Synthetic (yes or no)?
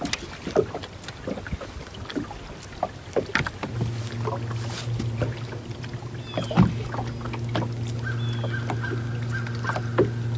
no